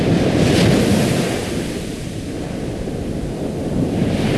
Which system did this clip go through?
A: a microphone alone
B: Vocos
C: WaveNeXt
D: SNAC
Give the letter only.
A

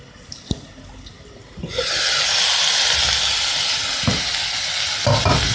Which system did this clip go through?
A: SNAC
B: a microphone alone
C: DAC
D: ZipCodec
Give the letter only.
B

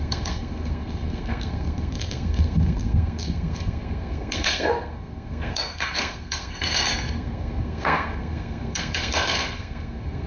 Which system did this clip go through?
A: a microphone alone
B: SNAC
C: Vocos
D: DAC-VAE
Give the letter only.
B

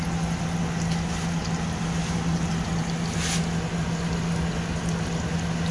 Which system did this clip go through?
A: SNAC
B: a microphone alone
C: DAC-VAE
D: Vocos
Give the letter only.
B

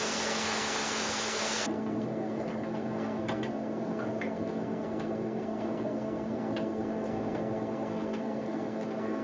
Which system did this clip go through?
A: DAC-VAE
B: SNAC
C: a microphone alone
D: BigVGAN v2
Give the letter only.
B